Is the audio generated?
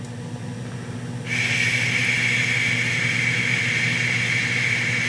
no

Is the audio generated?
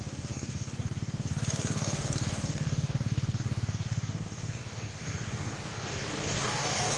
yes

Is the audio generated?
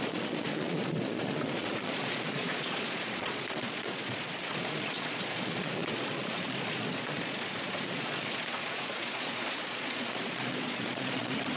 yes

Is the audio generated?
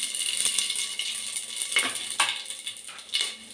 no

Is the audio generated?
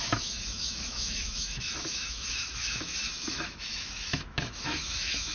yes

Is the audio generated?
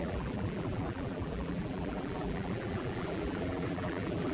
yes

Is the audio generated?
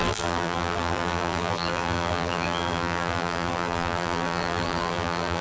yes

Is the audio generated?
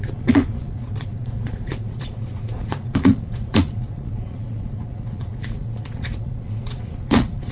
yes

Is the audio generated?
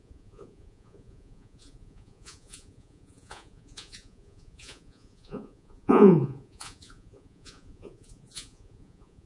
yes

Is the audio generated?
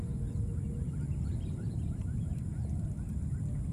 no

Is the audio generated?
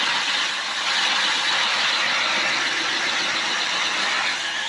no